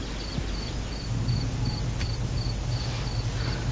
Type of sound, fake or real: real